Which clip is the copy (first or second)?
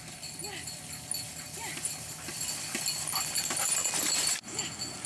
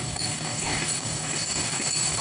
second